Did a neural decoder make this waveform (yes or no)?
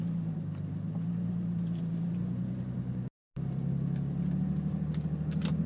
no